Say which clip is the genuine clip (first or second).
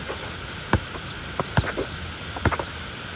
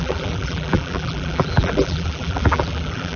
first